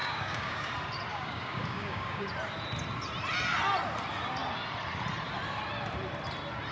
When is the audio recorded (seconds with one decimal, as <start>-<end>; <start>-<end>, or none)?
0.7-1.1; 2.3-6.7